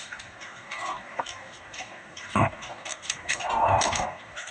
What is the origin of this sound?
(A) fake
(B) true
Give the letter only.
A